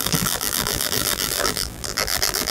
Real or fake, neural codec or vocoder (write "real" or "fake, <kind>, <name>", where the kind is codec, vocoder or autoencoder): fake, vocoder, BigVGAN v2